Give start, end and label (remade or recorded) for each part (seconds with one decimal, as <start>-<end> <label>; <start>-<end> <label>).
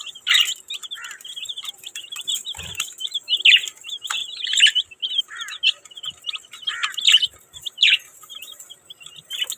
0.0-9.6 recorded